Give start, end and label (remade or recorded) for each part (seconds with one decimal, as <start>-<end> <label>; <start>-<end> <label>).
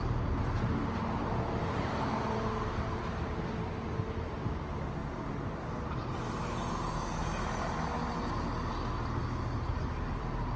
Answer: 0.0-5.0 remade; 5.0-5.8 recorded; 5.8-6.4 remade; 6.4-9.7 recorded; 9.7-10.6 remade